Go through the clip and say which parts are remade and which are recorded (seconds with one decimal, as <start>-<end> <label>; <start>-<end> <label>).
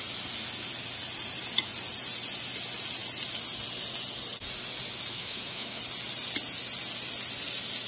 0.0-5.1 recorded; 5.1-5.8 remade; 5.8-7.9 recorded